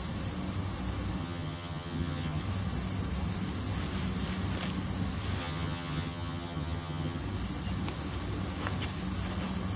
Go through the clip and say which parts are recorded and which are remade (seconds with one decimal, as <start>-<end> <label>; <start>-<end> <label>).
0.0-1.2 recorded; 1.2-2.4 remade; 2.4-5.4 recorded; 5.4-7.2 remade; 7.2-9.8 recorded